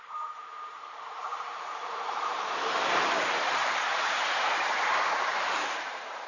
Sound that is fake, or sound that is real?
fake